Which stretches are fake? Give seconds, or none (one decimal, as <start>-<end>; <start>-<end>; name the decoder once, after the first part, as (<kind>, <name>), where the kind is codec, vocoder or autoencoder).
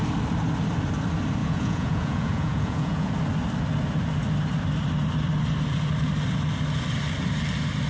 1.4-3.1 (vocoder, Vocos)